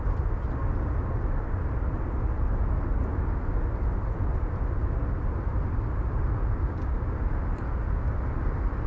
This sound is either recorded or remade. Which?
recorded